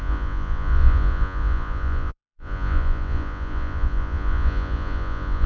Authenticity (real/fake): fake